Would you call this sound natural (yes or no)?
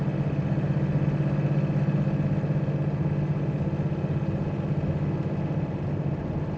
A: yes